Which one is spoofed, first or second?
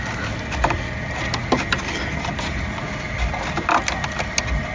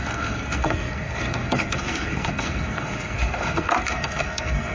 second